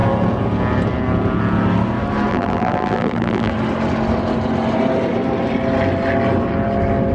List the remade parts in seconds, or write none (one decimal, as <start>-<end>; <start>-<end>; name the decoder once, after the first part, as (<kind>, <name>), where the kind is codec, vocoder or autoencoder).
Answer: 2.3-3.5 (vocoder, BigVGAN v2)